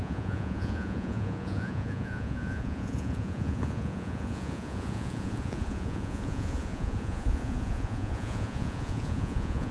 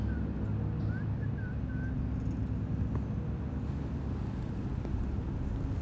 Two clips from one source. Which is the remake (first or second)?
first